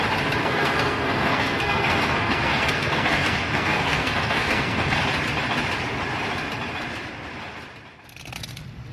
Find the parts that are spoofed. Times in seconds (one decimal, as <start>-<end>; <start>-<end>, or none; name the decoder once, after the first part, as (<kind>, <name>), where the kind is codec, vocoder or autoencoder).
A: 0.4-5.0 (codec, SNAC)

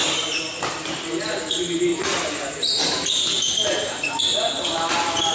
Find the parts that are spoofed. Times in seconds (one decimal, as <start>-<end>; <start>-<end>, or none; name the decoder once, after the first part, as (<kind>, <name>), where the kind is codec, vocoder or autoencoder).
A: none

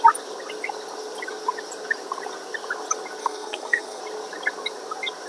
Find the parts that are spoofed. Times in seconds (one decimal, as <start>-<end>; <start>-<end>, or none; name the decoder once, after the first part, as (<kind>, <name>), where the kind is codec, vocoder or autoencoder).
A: 3.2-4.0 (codec, SNAC)

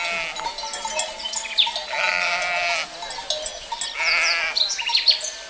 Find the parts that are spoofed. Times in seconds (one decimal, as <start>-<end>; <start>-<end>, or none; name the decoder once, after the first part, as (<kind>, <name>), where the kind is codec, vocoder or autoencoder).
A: none

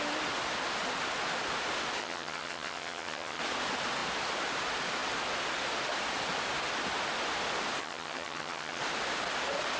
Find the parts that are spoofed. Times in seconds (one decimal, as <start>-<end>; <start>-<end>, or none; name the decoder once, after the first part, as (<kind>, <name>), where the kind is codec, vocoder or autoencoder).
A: 2.0-3.4 (vocoder, HiFi-GAN); 7.8-8.8

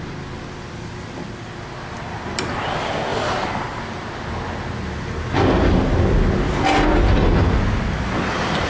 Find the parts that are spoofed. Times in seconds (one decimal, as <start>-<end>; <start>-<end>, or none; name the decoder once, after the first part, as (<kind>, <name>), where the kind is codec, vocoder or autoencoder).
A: none

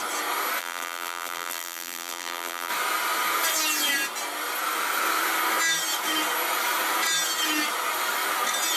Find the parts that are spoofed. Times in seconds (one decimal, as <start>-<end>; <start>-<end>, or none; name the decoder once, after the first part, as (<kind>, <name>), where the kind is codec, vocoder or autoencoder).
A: 0.6-2.7 (vocoder, BigVGAN v2)

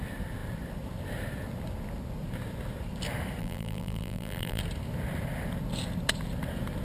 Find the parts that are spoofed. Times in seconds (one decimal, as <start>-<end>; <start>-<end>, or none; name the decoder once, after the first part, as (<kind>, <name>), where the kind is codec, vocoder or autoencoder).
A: 3.4-4.6 (vocoder, BigVGAN v2)